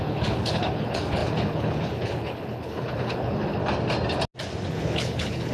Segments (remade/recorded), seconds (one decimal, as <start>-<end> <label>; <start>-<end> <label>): 0.0-3.6 remade; 3.6-4.7 recorded; 4.7-5.5 remade